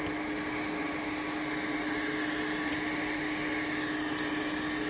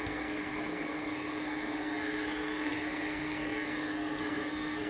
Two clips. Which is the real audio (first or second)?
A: first